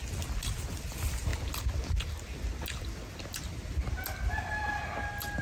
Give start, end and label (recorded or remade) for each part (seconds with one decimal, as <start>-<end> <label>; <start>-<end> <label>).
0.0-5.4 recorded